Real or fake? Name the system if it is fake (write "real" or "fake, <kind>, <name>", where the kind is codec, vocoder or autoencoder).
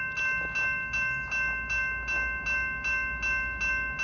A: real